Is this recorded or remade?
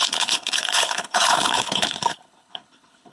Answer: remade